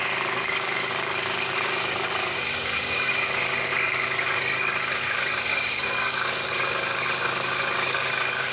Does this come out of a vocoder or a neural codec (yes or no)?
yes